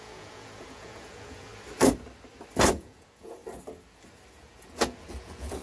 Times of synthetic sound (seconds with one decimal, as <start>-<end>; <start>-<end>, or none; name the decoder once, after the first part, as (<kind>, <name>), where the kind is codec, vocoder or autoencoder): 0.0-1.5 (vocoder, Vocos); 2.7-3.4; 4.3-5.6

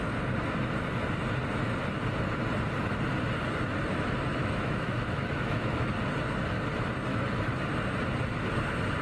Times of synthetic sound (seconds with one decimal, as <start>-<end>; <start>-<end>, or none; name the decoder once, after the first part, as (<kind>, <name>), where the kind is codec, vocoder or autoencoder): 4.3-5.9 (autoencoder, DAC-VAE); 7.1-7.7